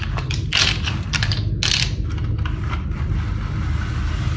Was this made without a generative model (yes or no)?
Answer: yes